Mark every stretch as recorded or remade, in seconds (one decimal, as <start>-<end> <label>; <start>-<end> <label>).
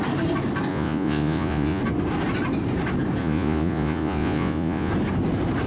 0.0-0.7 recorded; 0.7-1.8 remade; 1.8-3.2 recorded; 3.2-4.9 remade; 4.9-5.7 recorded